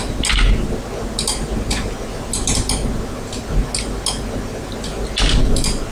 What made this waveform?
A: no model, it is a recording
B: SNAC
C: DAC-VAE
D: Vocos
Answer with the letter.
A